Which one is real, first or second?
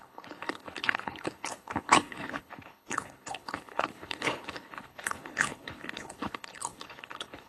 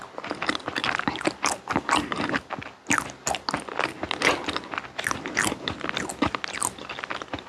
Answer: second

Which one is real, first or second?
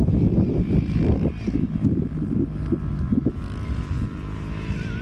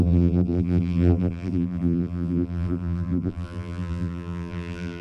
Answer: first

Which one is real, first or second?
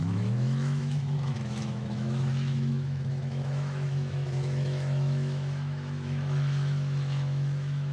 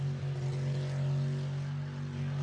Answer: second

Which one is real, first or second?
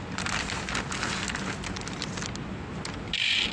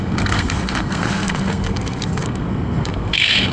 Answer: first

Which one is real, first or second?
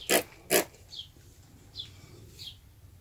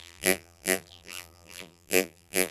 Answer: first